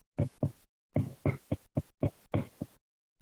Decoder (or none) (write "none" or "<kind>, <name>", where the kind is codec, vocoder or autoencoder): none